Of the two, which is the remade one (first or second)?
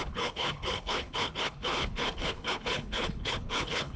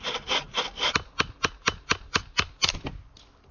first